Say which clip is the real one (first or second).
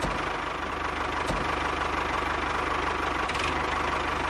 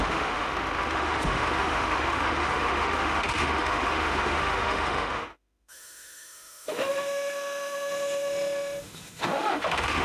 first